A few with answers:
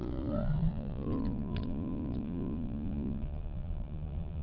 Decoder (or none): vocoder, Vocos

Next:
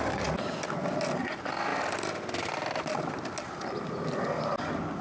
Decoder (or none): none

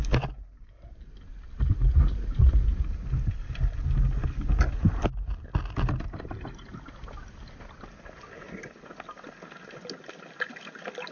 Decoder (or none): none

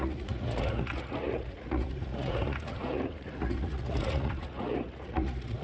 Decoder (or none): vocoder, Vocos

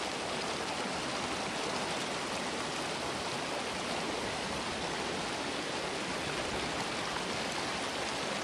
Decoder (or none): none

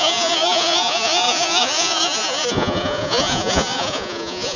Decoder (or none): vocoder, Vocos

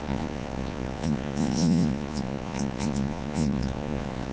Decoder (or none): vocoder, Vocos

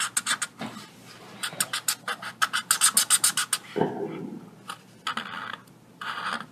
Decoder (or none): none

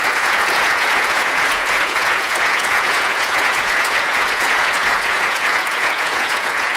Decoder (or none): vocoder, Vocos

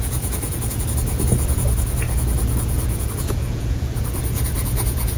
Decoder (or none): vocoder, Vocos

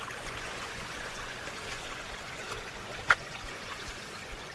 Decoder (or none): vocoder, Vocos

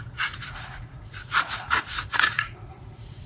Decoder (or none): vocoder, Vocos